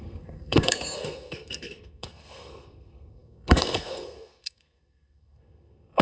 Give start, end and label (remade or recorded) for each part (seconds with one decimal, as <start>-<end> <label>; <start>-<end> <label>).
0.0-6.0 remade